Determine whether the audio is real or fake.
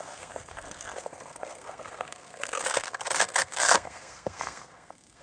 fake